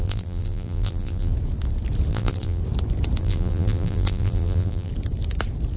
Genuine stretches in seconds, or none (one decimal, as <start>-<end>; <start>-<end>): 1.3-2.1; 2.6-3.2; 4.9-5.8